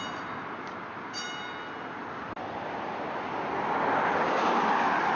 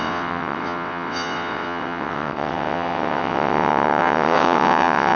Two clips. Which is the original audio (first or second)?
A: first